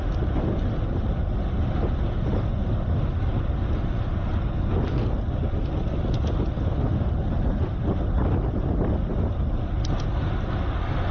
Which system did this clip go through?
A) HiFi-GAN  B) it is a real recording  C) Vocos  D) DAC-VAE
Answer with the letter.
B